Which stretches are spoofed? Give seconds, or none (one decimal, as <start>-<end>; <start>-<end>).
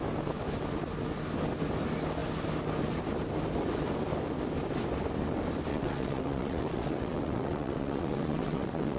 5.7-9.0